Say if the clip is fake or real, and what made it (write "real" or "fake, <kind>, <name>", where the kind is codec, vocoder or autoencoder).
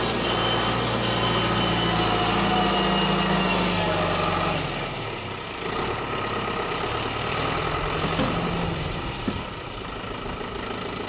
real